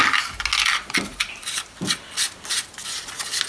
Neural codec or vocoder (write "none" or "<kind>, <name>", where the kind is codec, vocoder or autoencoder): none